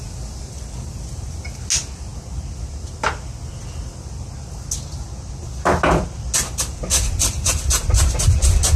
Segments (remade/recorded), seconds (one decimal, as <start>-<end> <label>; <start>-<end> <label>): 0.0-8.8 recorded

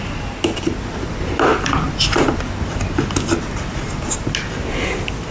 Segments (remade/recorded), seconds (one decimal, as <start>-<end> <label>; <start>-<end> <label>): 0.0-5.3 recorded

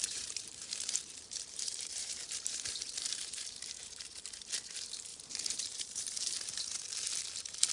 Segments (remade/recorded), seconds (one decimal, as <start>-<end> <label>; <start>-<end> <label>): 0.0-4.6 remade; 4.6-5.1 recorded; 5.1-6.4 remade; 6.4-7.7 recorded

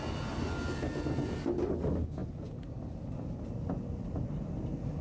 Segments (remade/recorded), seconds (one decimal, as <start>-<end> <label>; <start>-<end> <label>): 0.0-5.0 recorded

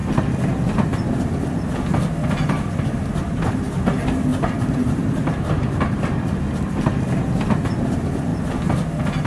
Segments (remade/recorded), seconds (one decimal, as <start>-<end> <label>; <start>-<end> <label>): 0.0-4.3 recorded; 4.3-6.4 remade; 6.4-9.3 recorded

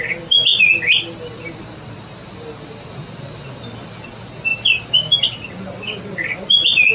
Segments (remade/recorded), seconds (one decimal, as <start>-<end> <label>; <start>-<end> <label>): 0.0-6.9 recorded

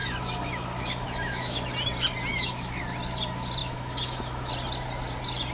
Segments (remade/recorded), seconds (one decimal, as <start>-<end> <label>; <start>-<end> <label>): 0.0-1.7 remade; 1.7-2.3 recorded; 2.3-2.8 remade; 2.8-3.6 recorded; 3.6-4.5 remade; 4.5-5.5 recorded